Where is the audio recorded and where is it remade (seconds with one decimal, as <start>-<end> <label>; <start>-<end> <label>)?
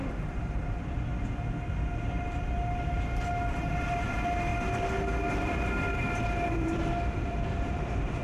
0.0-1.1 remade; 1.1-2.2 recorded; 2.2-4.5 remade; 4.5-5.3 recorded; 5.3-8.2 remade